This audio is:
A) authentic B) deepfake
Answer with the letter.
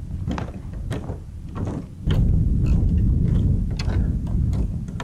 A